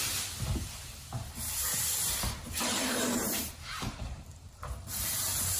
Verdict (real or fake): fake